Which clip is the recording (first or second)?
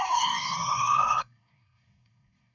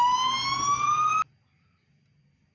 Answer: second